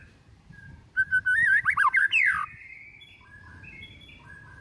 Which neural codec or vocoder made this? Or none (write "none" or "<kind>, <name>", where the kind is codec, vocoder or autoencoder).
vocoder, BigVGAN v2